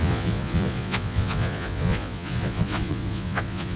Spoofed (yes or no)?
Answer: yes